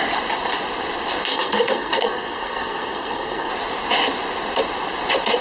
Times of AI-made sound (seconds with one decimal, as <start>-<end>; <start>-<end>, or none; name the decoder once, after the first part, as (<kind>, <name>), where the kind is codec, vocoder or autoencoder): 1.3-3.5 (codec, SNAC)